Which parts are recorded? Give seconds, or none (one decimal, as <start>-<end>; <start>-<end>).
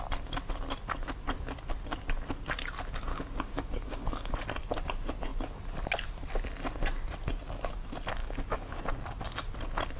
0.0-3.1; 4.3-8.2; 8.8-10.0